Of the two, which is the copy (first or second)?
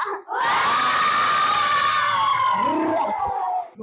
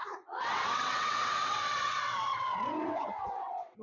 second